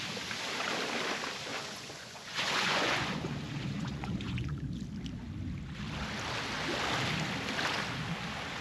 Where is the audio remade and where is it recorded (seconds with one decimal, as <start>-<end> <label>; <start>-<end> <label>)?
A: 0.0-1.5 recorded; 1.5-4.6 remade; 4.6-8.6 recorded